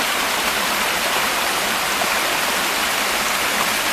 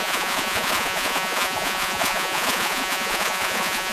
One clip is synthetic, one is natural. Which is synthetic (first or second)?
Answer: second